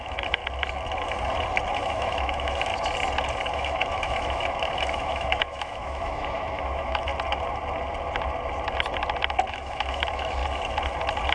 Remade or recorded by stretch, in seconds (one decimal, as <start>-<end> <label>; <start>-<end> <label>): 0.0-0.4 remade; 0.4-1.7 recorded; 1.7-2.7 remade; 2.7-3.5 recorded; 3.5-7.1 remade; 7.1-9.5 recorded; 9.5-10.4 remade; 10.4-11.3 recorded